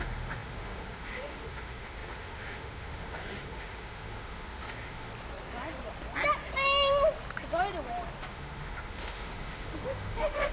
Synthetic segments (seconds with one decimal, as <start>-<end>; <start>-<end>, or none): 0.0-5.1; 8.3-10.5